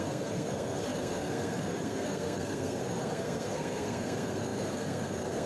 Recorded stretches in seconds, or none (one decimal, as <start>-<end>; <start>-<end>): none